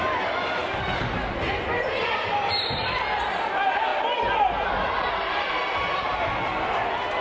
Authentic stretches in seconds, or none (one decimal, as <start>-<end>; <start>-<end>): 0.0-7.2